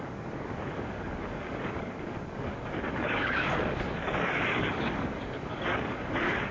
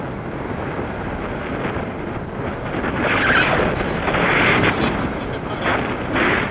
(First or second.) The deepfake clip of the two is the first